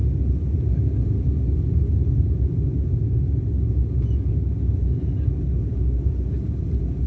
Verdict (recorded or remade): recorded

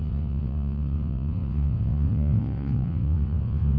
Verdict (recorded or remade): remade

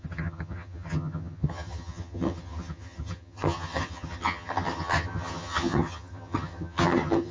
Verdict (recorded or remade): remade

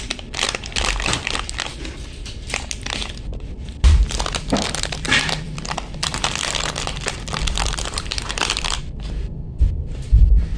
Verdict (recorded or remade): remade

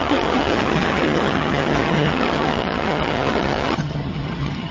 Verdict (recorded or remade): remade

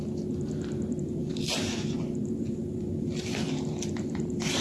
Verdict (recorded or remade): remade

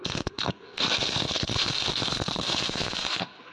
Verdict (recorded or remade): remade